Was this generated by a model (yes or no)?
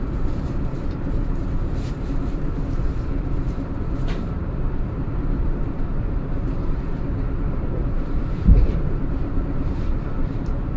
yes